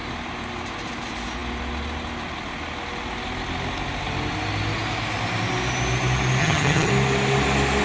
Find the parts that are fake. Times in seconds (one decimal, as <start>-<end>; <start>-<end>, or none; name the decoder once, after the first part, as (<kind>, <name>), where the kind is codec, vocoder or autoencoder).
6.4-6.9 (vocoder, HiFi-GAN)